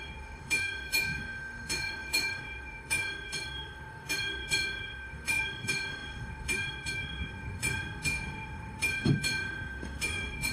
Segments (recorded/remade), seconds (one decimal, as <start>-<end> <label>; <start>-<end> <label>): 0.0-10.5 remade